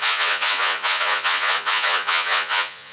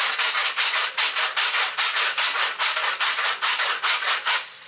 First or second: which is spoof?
first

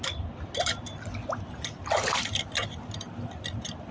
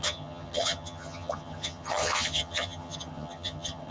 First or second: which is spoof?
second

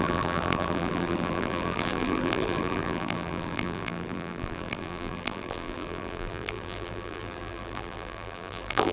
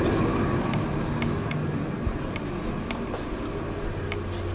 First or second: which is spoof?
first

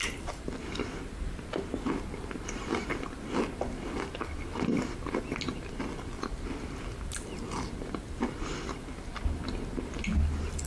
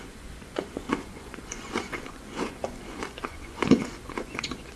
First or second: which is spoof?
second